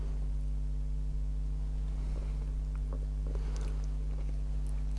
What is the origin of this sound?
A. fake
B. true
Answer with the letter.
B